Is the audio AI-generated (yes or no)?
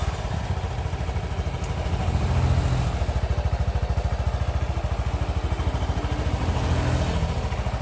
no